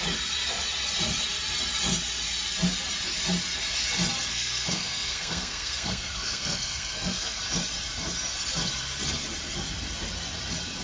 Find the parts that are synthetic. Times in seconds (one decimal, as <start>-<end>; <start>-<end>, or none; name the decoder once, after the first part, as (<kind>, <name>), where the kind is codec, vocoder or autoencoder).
4.3-7.4 (codec, SNAC)